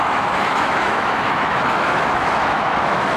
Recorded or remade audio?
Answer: remade